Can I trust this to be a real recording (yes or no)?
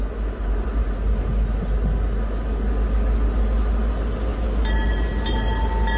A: yes